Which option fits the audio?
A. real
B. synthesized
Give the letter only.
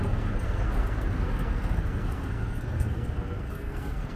B